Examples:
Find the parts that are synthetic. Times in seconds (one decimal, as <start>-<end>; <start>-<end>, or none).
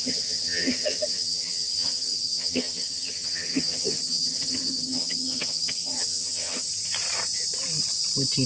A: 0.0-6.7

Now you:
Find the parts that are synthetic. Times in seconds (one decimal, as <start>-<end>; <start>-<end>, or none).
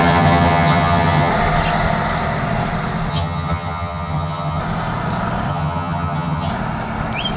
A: 0.0-1.3; 3.1-4.6; 5.5-6.5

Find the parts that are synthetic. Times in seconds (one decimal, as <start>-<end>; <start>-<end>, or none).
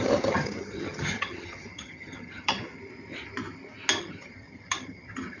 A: 0.0-2.6; 4.0-5.4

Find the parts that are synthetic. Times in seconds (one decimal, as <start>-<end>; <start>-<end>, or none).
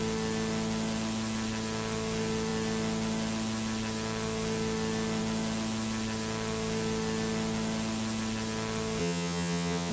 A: 9.0-9.9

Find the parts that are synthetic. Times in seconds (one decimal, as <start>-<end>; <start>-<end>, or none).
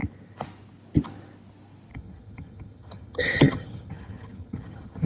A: 1.9-5.1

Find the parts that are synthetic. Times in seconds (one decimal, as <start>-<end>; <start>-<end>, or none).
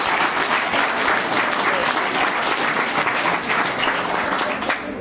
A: none